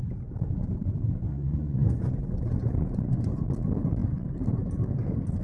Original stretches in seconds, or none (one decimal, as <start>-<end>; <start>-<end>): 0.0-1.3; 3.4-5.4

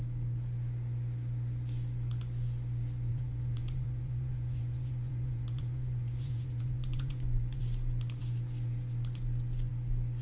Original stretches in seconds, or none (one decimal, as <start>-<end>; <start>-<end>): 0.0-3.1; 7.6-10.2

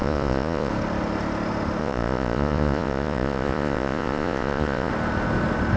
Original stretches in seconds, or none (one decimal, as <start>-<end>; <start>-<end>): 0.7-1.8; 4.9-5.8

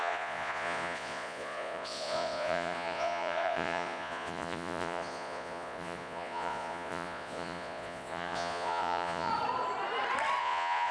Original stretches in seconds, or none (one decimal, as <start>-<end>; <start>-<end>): 9.3-10.4

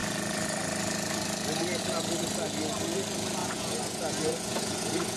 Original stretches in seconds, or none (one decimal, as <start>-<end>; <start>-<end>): 0.0-3.4